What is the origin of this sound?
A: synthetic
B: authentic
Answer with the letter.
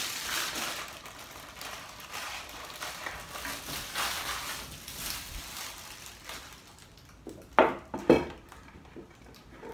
B